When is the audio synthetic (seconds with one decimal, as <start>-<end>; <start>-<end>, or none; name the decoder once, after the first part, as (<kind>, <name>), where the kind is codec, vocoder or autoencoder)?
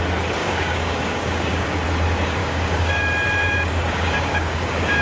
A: 0.4-1.8 (codec, DAC); 2.4-3.0; 3.4-5.0